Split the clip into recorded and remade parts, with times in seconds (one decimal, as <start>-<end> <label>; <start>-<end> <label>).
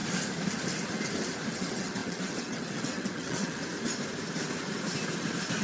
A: 0.0-1.5 recorded; 1.5-3.6 remade; 3.6-5.6 recorded